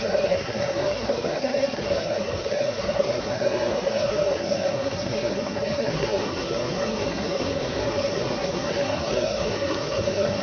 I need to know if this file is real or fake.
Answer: fake